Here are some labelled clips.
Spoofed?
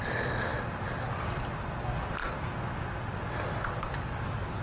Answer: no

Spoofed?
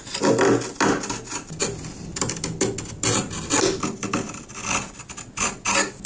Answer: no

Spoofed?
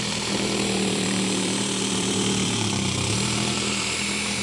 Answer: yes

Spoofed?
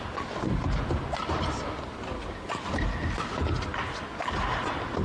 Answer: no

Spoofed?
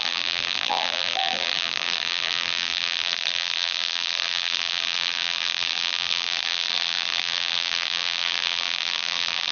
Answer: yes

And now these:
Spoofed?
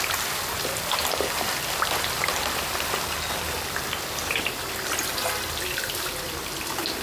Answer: yes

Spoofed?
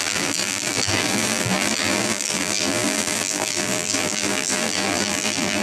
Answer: yes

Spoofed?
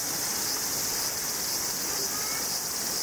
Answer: no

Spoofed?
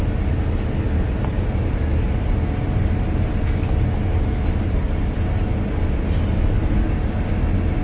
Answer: no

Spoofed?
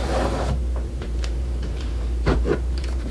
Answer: yes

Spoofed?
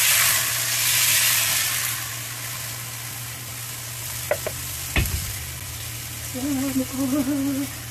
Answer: no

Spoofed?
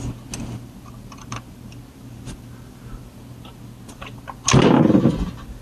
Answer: no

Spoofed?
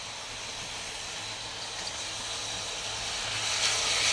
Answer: no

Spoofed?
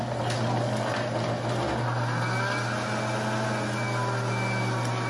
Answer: no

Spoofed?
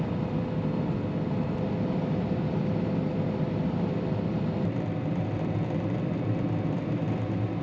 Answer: no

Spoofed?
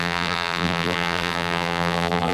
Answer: yes